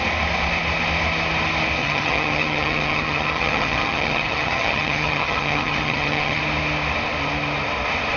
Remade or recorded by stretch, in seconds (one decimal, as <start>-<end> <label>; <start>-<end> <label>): 0.0-1.8 recorded; 1.8-6.4 remade; 6.4-8.2 recorded